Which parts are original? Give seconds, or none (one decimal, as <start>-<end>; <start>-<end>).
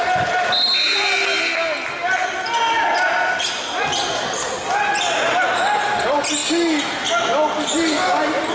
0.0-8.5